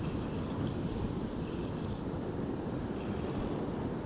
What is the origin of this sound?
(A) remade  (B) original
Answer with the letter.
B